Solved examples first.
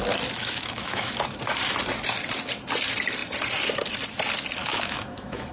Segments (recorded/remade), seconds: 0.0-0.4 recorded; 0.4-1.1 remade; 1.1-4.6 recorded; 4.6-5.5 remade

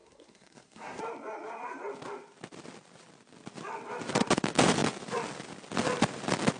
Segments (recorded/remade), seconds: 0.0-1.0 remade; 1.0-6.6 recorded

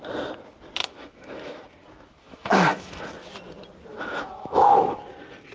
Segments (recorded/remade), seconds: 0.0-0.8 recorded; 0.8-1.7 remade; 1.7-2.2 recorded; 2.2-3.0 remade; 3.0-3.9 recorded; 3.9-5.0 remade; 5.0-5.5 recorded

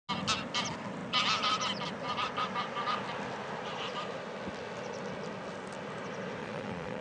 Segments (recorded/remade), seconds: 0.0-6.4 recorded; 6.4-7.0 remade

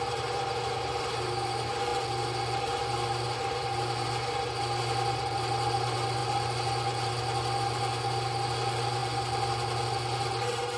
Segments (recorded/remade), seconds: 0.0-1.9 remade; 1.9-2.8 recorded; 2.8-9.0 remade; 9.0-10.8 recorded

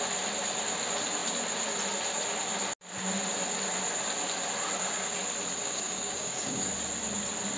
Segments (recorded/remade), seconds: 0.0-5.6 recorded; 5.6-6.7 remade; 6.7-7.6 recorded